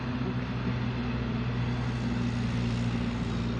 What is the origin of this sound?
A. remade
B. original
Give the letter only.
B